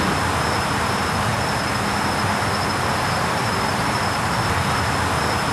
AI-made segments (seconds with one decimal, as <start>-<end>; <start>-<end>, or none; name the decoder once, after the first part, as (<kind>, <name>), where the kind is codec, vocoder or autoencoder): 3.7-4.3 (vocoder, BigVGAN v2)